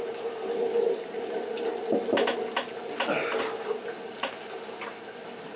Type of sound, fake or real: real